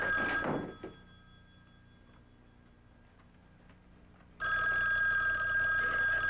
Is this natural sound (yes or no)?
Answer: yes